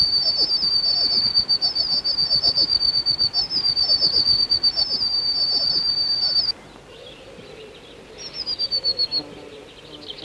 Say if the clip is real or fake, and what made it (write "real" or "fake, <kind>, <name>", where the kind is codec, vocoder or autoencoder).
real